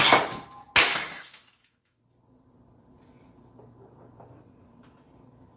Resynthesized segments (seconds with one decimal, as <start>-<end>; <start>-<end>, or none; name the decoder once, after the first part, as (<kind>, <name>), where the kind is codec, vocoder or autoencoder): 0.8-2.0 (autoencoder, DAC-VAE)